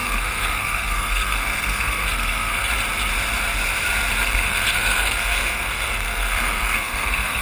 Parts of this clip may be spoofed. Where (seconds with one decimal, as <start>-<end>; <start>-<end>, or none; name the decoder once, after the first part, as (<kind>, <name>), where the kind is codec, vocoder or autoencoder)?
0.0-2.7 (codec, SNAC); 4.2-7.4